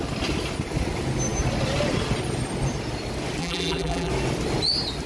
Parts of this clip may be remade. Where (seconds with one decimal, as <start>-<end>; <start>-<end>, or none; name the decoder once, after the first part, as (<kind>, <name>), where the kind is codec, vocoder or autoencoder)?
3.4-4.1 (vocoder, BigVGAN v2)